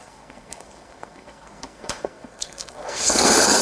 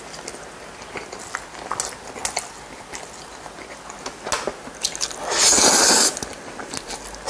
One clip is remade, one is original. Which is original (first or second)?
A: second